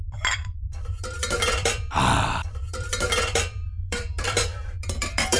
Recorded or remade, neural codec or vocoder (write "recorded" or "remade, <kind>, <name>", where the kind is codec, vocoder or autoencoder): remade, vocoder, BigVGAN v2